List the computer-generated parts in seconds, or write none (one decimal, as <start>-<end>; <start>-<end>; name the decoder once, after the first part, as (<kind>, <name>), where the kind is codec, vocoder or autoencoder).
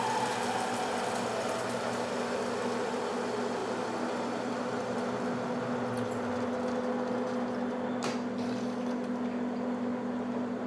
none